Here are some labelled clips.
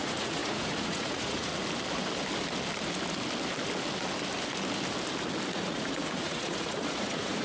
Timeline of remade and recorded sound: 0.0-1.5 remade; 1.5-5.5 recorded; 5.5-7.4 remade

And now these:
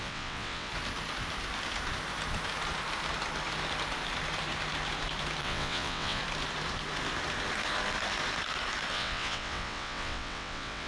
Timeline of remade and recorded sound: 0.0-0.7 remade; 0.7-5.4 recorded; 5.4-6.2 remade; 6.2-8.9 recorded; 8.9-10.9 remade